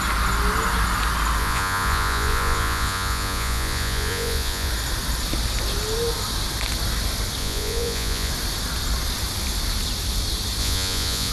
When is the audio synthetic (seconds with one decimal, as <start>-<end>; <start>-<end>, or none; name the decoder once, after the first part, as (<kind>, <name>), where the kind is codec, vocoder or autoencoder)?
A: 1.4-4.7 (vocoder, Vocos); 7.4-8.3; 10.6-11.3